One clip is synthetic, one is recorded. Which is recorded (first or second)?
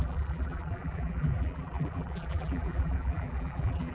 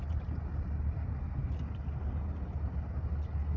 second